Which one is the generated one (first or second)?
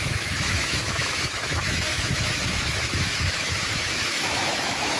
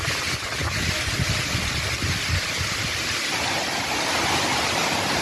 first